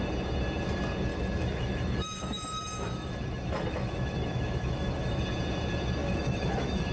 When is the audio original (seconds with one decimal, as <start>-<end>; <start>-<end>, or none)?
0.0-1.1; 5.2-6.0